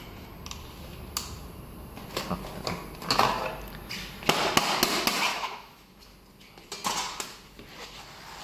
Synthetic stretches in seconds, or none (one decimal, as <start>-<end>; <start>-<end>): 5.3-6.0